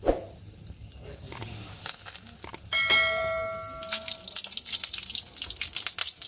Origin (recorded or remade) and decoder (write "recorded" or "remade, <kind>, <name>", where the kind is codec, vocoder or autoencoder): recorded